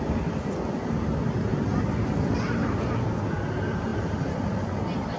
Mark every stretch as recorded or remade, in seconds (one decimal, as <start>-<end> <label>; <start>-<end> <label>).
0.0-1.5 recorded; 1.5-2.9 remade; 2.9-5.2 recorded